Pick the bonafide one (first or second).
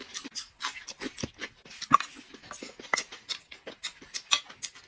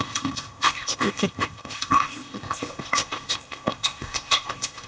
first